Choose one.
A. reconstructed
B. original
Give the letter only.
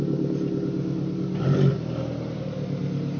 B